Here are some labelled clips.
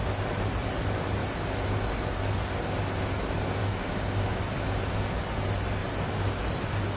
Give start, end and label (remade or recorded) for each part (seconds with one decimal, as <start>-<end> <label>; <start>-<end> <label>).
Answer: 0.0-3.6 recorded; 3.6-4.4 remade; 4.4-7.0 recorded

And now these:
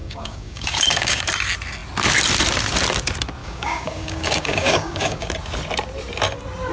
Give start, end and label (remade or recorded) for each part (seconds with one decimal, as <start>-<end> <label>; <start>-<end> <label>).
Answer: 0.0-1.2 remade; 1.2-3.4 recorded; 3.4-5.3 remade; 5.3-6.7 recorded

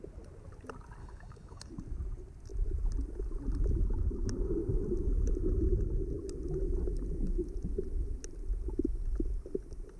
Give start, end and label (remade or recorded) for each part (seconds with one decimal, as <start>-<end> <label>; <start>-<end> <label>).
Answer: 0.0-1.0 recorded; 1.0-1.7 remade; 1.7-10.0 recorded